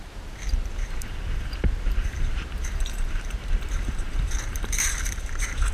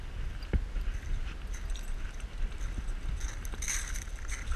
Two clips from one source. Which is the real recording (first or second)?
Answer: second